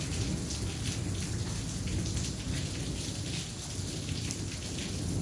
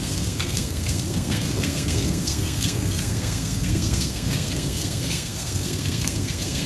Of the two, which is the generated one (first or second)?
second